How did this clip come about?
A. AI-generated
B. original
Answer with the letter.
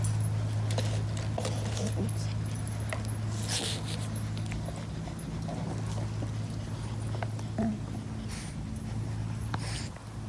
B